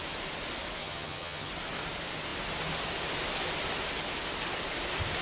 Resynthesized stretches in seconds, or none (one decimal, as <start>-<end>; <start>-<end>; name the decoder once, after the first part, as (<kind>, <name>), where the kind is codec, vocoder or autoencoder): 0.8-1.5 (vocoder, HiFi-GAN)